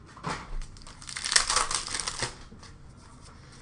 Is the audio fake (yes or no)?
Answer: no